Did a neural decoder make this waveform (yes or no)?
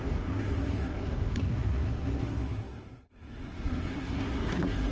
yes